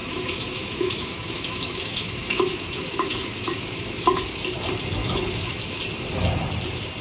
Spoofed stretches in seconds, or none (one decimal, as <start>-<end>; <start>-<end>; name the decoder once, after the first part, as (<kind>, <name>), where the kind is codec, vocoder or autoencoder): 0.0-4.2 (autoencoder, DAC-VAE); 5.0-5.8